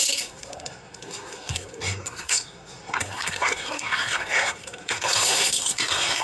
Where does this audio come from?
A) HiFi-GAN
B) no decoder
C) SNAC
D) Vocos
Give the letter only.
C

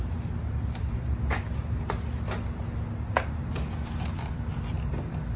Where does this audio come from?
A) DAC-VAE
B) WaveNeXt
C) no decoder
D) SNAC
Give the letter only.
C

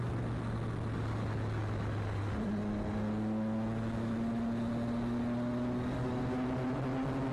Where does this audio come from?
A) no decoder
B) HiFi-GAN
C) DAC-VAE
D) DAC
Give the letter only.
A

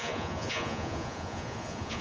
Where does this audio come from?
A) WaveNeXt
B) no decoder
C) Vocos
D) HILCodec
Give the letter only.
C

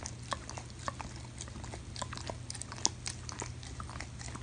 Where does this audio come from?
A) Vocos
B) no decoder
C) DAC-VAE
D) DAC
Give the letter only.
B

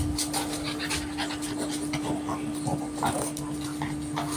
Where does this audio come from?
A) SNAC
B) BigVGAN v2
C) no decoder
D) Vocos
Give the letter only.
C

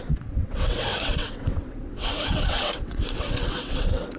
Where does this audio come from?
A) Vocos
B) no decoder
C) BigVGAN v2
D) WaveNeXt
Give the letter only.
D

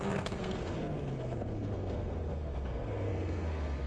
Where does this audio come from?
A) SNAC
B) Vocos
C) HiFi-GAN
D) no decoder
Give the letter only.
A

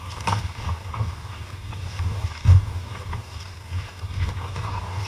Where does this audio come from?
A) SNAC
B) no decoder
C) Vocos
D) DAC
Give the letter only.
D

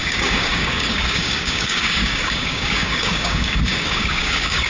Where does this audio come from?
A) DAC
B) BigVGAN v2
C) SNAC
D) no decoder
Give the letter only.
A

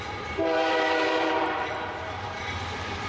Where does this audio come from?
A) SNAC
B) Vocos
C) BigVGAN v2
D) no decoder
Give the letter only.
C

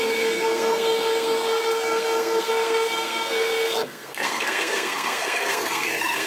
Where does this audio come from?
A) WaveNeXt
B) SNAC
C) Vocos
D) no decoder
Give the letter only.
B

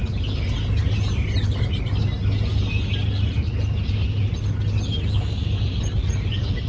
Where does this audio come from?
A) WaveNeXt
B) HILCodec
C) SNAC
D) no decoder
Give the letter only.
D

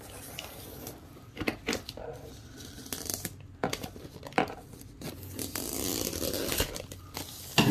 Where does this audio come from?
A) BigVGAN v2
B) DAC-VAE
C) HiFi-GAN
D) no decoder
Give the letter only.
D